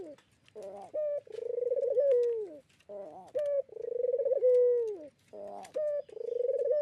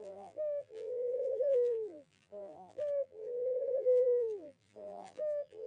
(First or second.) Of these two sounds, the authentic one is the first